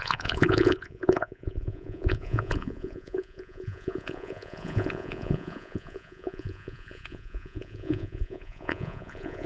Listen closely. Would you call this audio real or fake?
fake